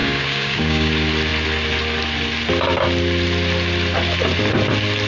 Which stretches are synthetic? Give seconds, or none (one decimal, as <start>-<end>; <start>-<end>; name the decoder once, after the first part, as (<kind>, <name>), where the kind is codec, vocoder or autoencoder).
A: 0.0-0.9 (codec, DAC)